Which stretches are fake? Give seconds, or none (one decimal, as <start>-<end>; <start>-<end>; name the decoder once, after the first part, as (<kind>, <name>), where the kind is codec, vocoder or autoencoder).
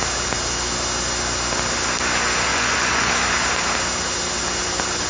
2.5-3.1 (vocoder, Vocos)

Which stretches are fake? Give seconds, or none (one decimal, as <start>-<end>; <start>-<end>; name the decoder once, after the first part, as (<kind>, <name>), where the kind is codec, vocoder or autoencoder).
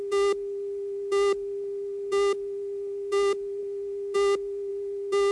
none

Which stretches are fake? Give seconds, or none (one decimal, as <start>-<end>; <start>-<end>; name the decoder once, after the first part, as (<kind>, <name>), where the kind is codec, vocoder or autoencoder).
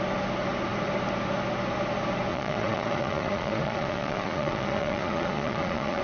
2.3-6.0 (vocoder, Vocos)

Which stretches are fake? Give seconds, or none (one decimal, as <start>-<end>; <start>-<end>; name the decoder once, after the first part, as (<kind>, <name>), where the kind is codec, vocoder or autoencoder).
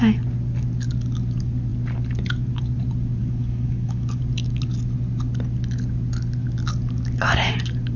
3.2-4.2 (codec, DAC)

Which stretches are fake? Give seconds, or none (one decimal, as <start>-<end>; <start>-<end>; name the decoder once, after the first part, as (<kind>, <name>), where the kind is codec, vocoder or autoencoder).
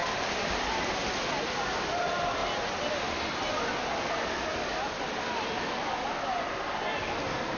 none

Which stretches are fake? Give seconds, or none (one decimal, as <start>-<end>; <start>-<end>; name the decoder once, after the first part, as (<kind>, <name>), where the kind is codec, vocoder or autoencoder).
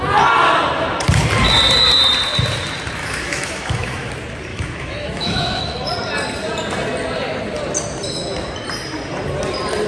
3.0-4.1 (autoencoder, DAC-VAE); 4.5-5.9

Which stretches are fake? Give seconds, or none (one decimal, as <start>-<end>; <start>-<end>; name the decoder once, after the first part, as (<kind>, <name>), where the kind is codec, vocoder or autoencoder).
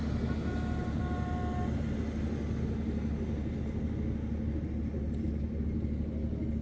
none